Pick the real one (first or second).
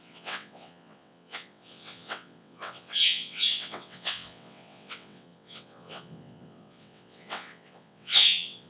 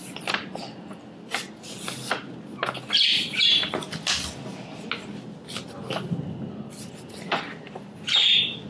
second